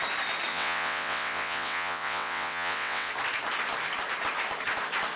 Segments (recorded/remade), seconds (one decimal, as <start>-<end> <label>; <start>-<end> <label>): 0.0-0.5 recorded; 0.5-3.1 remade; 3.1-5.2 recorded